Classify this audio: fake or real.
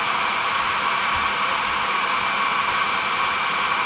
real